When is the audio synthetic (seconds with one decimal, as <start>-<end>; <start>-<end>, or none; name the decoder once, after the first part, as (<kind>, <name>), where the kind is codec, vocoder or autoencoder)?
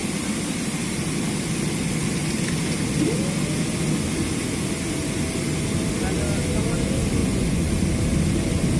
7.2-7.7 (vocoder, Vocos)